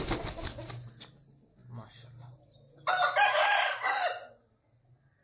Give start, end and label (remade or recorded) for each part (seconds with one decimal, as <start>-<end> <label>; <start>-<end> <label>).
0.0-5.2 recorded